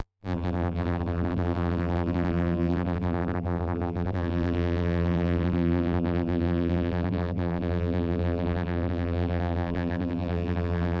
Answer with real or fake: fake